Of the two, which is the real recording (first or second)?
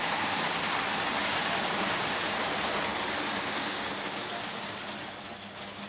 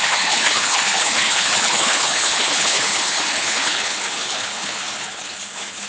first